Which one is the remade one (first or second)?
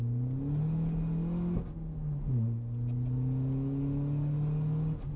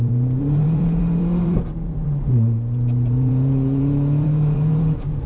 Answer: second